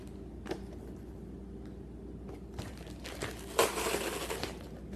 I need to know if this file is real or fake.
real